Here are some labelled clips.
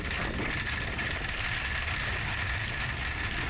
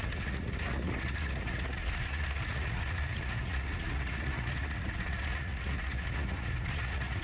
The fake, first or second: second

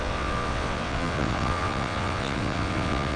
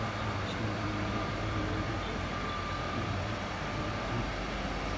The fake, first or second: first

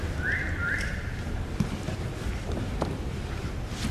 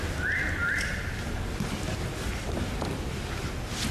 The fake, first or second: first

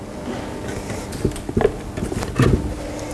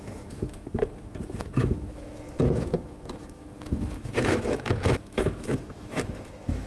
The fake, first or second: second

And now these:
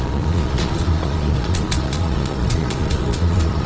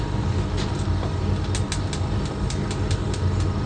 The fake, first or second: first